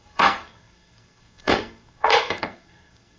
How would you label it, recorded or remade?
remade